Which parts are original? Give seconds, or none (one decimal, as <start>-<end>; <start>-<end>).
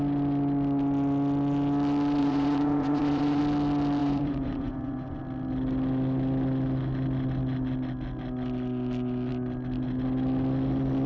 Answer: 0.0-2.2; 3.4-4.0; 5.2-11.1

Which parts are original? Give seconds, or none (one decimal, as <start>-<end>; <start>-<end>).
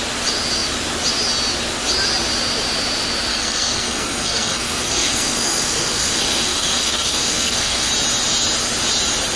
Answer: 0.0-3.3; 7.9-9.4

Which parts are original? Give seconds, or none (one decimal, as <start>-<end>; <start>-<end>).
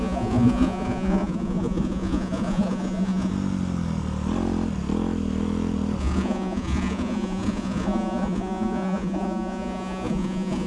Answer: 3.3-6.0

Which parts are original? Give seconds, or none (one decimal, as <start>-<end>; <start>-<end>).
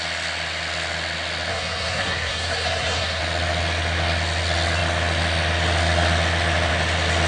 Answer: 0.0-1.5; 3.2-7.3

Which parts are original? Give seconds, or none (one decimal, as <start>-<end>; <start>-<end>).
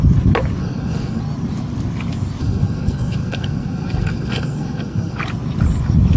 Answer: 0.0-0.6; 1.2-2.4; 5.2-6.2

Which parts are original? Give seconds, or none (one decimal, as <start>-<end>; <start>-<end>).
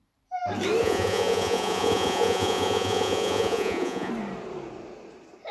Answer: 0.0-0.8; 4.1-5.5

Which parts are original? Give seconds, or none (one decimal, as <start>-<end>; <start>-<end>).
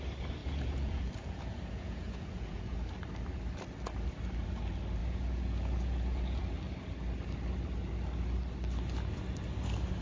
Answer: 0.0-0.4; 2.9-5.0; 6.4-10.0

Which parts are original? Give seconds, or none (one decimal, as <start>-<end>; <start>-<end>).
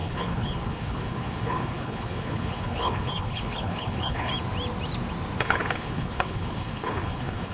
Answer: 4.3-5.4